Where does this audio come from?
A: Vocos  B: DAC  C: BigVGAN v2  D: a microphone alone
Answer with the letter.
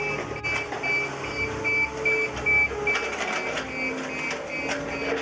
D